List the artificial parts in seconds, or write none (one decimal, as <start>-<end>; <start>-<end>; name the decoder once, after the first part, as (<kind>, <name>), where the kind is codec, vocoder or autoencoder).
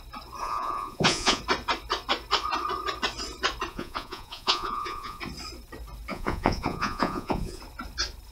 0.4-1.4 (vocoder, Vocos); 3.7-5.2; 6.1-7.6